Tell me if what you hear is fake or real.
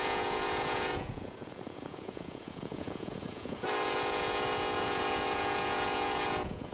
fake